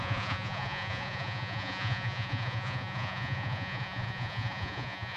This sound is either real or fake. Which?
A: fake